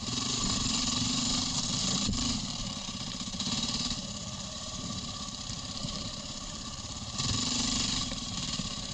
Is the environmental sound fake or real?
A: fake